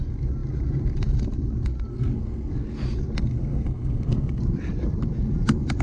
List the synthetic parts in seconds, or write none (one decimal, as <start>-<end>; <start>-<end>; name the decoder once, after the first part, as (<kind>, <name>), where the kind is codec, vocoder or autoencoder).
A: 1.9-2.5 (codec, SNAC); 3.3-4.4